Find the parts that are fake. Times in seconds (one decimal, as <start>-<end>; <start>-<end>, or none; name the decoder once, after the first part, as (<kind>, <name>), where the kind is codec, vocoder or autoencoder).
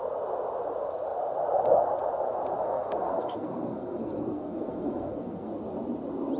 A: 2.6-5.5 (codec, SNAC)